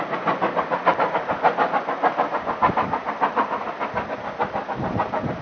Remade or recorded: recorded